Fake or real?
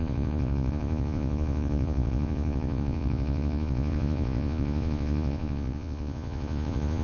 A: fake